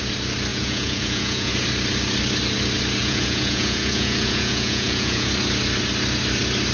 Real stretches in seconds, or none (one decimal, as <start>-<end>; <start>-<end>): 0.0-0.5; 1.5-3.0; 5.3-6.7